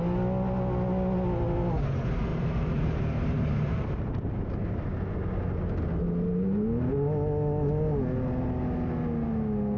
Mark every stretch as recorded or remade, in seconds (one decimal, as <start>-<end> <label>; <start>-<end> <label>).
0.0-2.3 recorded; 2.3-4.5 remade; 4.5-9.8 recorded

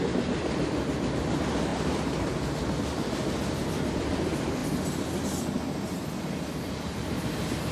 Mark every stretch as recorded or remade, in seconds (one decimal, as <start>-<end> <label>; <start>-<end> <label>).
0.0-7.7 recorded

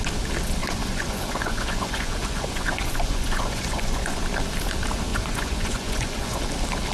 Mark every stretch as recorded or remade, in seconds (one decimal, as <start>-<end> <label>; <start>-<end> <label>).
0.0-0.6 recorded; 0.6-4.2 remade; 4.2-5.1 recorded; 5.1-6.4 remade; 6.4-6.9 recorded

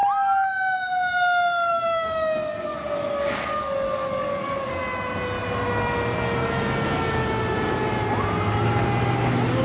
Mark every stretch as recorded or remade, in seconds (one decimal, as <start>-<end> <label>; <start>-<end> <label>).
0.0-1.7 recorded; 1.7-4.8 remade; 4.8-9.6 recorded

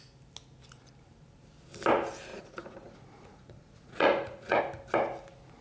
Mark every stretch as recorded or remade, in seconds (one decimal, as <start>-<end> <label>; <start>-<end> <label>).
0.0-2.3 recorded; 2.3-4.6 remade; 4.6-5.6 recorded

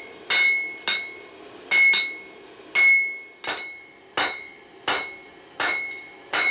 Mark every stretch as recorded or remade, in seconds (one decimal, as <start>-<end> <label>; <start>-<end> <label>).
0.0-6.5 recorded

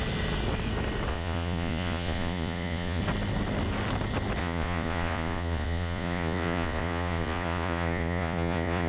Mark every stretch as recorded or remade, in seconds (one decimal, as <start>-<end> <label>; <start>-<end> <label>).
0.0-1.1 recorded; 1.1-3.0 remade; 3.0-4.4 recorded; 4.4-8.9 remade

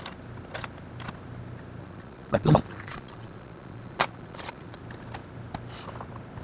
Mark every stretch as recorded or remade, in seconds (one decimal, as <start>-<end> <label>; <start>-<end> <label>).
0.0-1.8 recorded; 1.8-4.8 remade; 4.8-6.4 recorded